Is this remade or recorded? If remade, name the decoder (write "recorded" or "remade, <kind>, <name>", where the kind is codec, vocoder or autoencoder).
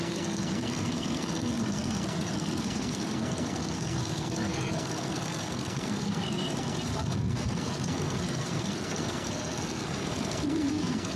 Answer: remade, codec, SNAC